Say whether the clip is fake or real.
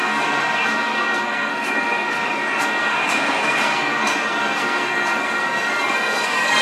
fake